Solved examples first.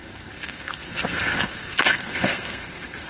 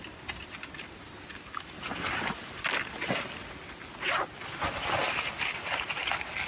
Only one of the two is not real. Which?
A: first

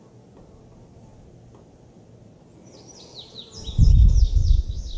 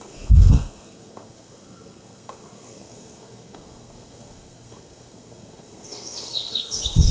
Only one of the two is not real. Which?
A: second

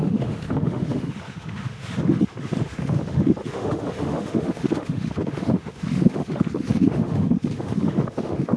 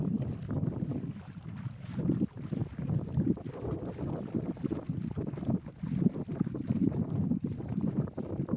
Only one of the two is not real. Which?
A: first